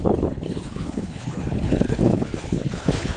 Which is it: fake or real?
fake